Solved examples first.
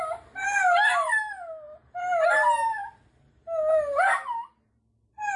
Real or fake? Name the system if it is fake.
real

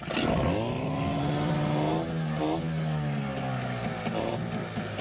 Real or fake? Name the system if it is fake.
real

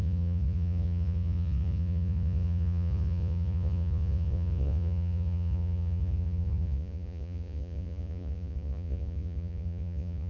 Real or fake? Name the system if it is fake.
fake, vocoder, Vocos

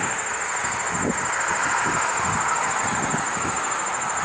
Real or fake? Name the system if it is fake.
real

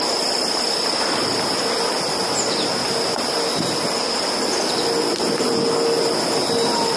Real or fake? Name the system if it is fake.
real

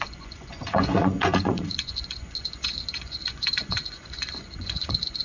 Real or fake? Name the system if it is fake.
fake, vocoder, Vocos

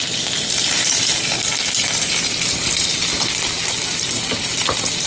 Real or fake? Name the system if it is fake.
real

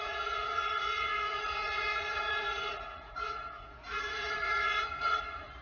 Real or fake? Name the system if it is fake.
fake, vocoder, Vocos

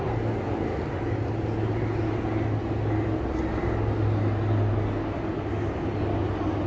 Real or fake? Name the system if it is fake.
real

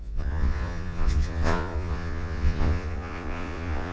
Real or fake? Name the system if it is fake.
fake, vocoder, Vocos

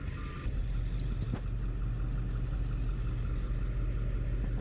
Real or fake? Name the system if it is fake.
real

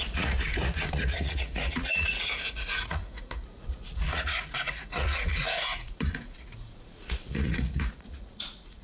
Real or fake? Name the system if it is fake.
fake, vocoder, Vocos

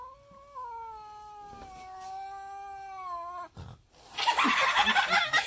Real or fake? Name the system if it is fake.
real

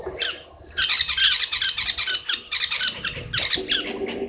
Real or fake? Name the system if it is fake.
real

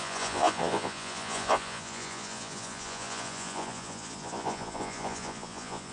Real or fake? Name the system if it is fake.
fake, vocoder, Vocos